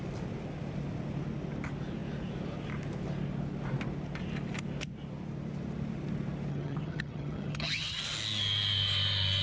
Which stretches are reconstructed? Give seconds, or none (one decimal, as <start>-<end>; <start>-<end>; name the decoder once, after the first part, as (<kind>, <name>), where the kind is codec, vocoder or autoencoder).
6.5-8.0 (vocoder, HiFi-GAN)